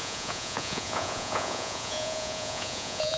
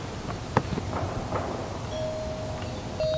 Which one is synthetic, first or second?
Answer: first